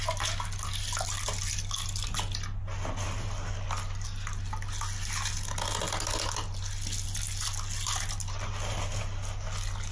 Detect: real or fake real